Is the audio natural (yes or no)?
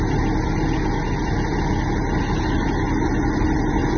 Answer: yes